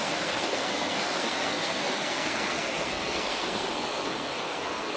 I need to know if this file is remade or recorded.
remade